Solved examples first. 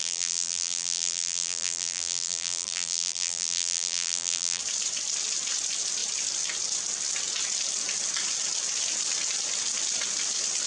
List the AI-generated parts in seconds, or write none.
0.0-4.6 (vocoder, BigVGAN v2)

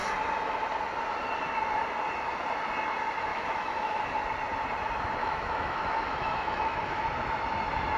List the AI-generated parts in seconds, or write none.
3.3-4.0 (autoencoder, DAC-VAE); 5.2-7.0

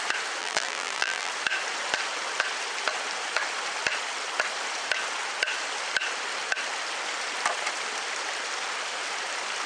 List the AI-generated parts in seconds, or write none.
0.4-1.3 (vocoder, BigVGAN v2)